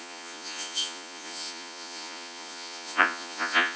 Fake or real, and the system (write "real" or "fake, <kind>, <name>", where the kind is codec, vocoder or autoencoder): fake, vocoder, Vocos